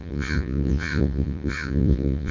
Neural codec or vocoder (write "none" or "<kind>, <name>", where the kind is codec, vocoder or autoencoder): vocoder, Vocos